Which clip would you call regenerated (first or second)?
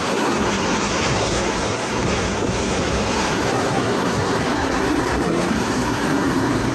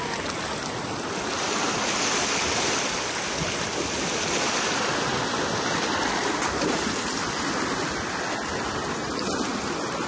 first